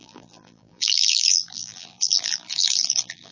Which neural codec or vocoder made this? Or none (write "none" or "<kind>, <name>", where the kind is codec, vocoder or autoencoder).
vocoder, BigVGAN v2